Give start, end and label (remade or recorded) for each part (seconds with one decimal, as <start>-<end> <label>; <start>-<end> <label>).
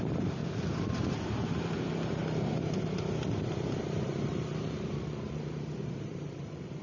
0.0-0.4 remade; 0.4-3.8 recorded; 3.8-6.8 remade